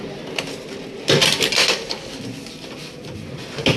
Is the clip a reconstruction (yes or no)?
no